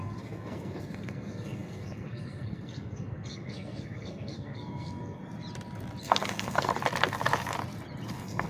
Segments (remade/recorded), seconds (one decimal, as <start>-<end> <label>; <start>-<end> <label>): 0.0-5.2 remade; 5.2-6.0 recorded; 6.0-6.7 remade; 6.7-8.1 recorded; 8.1-8.5 remade

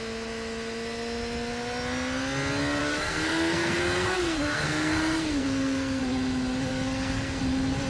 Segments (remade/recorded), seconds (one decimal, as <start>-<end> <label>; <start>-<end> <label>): 0.0-2.8 recorded; 2.8-6.0 remade; 6.0-6.7 recorded; 6.7-7.4 remade; 7.4-7.9 recorded

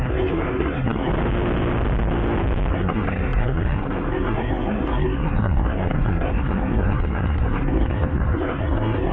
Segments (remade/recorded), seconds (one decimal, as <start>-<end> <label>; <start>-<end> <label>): 0.0-1.1 remade; 1.1-2.7 recorded; 2.7-9.1 remade

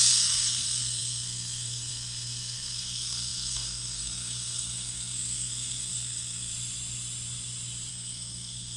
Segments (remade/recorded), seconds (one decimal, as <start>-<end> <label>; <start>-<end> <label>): 0.0-6.5 remade; 6.5-7.9 recorded; 7.9-8.8 remade

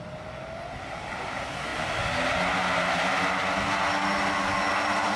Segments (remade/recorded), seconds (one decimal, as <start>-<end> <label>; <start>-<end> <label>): 0.0-5.2 recorded

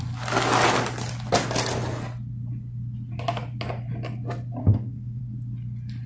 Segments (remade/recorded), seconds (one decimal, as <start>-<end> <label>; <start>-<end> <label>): 0.0-4.6 recorded; 4.6-5.2 remade; 5.2-6.1 recorded